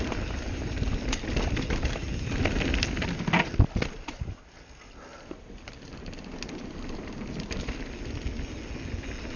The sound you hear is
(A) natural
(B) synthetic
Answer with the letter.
A